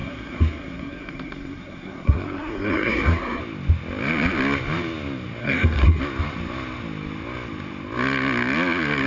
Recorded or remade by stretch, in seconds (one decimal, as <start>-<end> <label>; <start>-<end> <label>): 0.0-3.4 remade; 3.4-5.4 recorded; 5.4-6.0 remade; 6.0-9.1 recorded